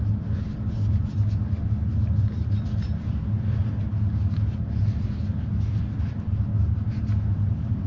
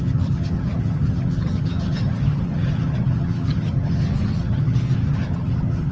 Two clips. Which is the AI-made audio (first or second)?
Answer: second